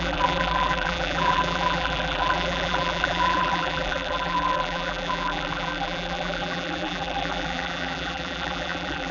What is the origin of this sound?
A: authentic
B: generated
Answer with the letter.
B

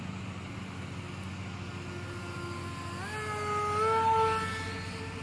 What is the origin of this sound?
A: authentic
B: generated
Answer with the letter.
A